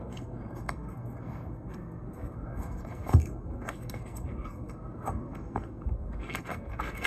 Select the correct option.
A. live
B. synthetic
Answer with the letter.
B